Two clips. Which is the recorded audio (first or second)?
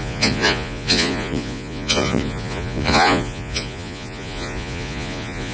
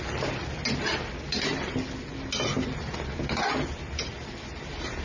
second